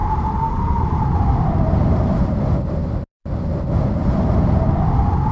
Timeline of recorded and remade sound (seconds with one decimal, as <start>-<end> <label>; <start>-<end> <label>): 0.0-3.2 remade; 3.2-4.0 recorded; 4.0-4.7 remade; 4.7-5.3 recorded